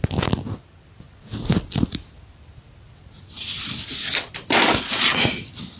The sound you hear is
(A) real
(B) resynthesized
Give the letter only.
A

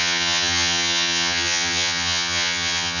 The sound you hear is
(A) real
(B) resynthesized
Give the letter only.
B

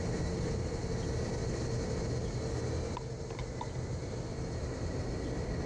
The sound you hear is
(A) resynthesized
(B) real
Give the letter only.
B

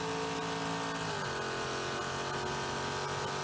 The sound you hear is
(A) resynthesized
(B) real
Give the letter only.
B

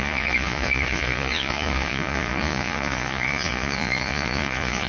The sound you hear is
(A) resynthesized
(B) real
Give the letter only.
A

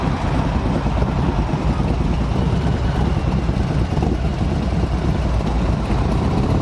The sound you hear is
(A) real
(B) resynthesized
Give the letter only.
B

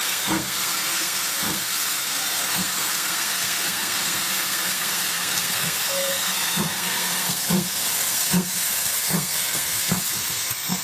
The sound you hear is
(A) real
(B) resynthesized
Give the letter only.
B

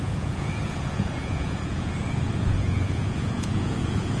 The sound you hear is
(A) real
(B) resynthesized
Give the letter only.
B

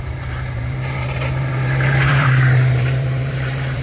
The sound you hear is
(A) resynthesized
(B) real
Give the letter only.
A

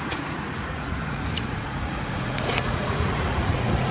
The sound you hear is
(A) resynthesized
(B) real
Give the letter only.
A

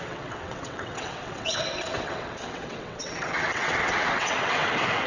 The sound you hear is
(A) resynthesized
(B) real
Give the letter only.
A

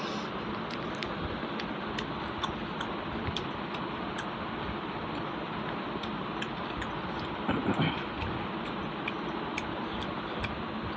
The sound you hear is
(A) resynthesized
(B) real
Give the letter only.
B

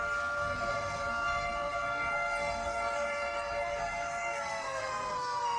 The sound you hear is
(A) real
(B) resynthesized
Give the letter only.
B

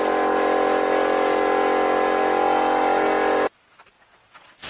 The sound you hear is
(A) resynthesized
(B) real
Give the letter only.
B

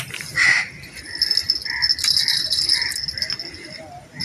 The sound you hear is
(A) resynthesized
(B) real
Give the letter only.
B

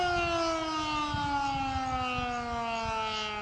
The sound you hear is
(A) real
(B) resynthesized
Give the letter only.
A